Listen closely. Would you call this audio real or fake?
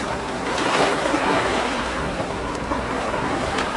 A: fake